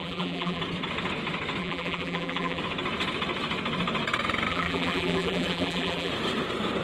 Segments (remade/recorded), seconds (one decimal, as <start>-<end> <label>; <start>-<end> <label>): 0.0-0.6 remade; 0.6-1.6 recorded; 1.6-2.6 remade; 2.6-4.5 recorded; 4.5-6.1 remade; 6.1-6.8 recorded